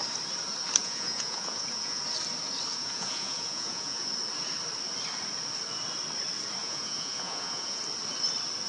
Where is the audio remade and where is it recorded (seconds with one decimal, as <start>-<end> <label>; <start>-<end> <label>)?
0.0-0.8 recorded; 0.8-2.0 remade; 2.0-2.7 recorded; 2.7-4.1 remade; 4.1-6.6 recorded; 6.6-7.8 remade; 7.8-8.7 recorded